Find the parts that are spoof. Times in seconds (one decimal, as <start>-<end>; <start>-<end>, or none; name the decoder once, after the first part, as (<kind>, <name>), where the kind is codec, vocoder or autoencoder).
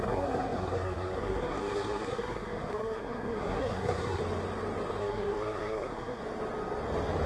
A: 0.0-4.2 (codec, SNAC); 5.0-6.2